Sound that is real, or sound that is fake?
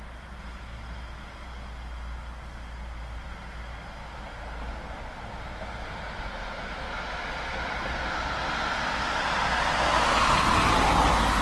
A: real